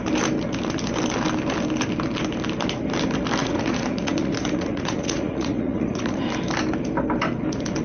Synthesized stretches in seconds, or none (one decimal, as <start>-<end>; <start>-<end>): 3.4-6.2